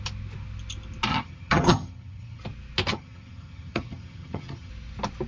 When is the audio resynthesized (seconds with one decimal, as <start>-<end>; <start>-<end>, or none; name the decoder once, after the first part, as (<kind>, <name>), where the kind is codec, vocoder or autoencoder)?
1.1-2.4 (vocoder, HiFi-GAN); 2.9-4.7